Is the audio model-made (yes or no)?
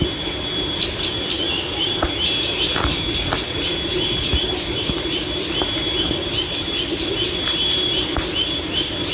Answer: no